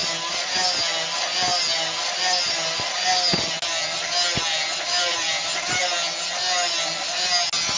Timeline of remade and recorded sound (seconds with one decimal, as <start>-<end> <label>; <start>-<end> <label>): 0.0-7.8 recorded